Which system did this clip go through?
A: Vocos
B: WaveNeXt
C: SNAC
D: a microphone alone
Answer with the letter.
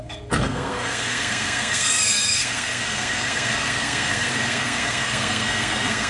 C